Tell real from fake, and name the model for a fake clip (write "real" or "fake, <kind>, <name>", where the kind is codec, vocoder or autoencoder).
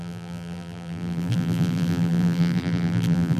fake, vocoder, BigVGAN v2